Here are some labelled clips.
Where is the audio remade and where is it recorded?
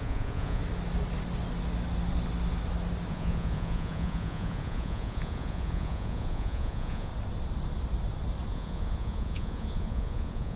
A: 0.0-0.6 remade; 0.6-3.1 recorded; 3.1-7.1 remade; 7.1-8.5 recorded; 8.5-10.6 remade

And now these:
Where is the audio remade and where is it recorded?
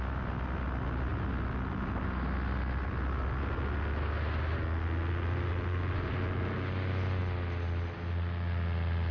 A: 0.0-9.1 recorded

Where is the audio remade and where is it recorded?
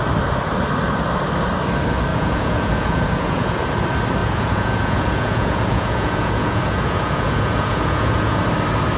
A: 0.0-2.1 recorded; 2.1-3.6 remade; 3.6-4.2 recorded; 4.2-8.4 remade; 8.4-9.0 recorded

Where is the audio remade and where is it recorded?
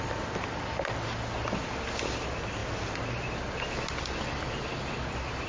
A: 0.0-5.5 recorded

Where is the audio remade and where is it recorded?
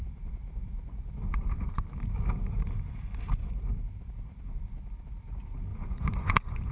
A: 0.0-5.7 recorded; 5.7-6.7 remade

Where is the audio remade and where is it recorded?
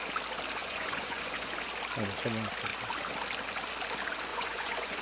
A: 0.0-0.6 recorded; 0.6-1.5 remade; 1.5-4.3 recorded; 4.3-5.0 remade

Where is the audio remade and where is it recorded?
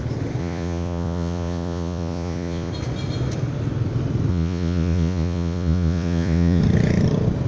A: 0.0-0.4 recorded; 0.4-2.7 remade; 2.7-4.3 recorded; 4.3-6.6 remade; 6.6-7.5 recorded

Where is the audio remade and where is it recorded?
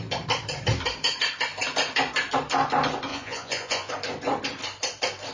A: 0.0-3.1 recorded; 3.1-3.9 remade; 3.9-5.3 recorded